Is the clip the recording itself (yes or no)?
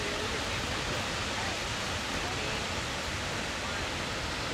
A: yes